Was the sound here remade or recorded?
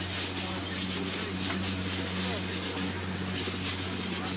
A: recorded